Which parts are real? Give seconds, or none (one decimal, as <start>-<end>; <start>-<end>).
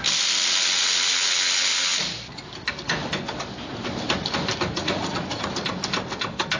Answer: 0.0-4.8; 5.5-6.6